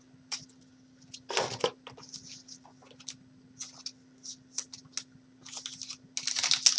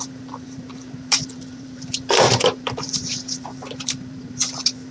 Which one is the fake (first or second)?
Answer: second